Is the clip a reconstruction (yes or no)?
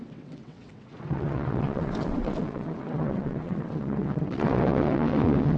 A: yes